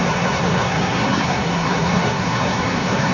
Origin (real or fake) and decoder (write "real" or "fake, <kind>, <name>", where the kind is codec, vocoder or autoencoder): fake, codec, SNAC